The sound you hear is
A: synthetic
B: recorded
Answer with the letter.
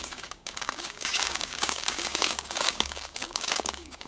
A